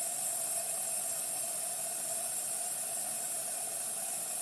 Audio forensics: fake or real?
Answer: real